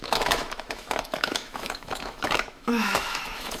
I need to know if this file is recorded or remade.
remade